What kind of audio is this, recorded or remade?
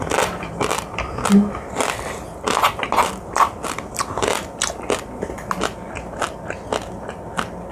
recorded